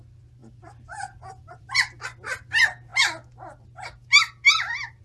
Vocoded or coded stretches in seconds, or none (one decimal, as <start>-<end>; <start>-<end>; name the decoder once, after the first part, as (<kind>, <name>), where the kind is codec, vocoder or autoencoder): 0.4-1.7 (vocoder, BigVGAN v2)